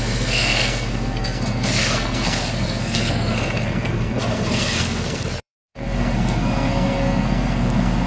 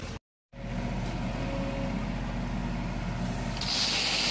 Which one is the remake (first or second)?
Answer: first